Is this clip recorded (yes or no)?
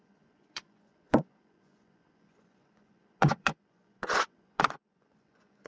no